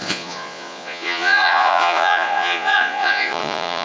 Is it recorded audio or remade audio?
remade